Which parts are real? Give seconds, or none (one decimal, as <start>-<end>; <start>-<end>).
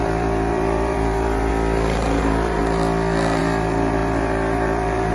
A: 1.5-2.2; 2.6-3.4